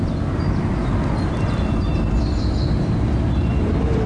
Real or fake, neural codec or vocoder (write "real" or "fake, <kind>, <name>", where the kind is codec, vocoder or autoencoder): real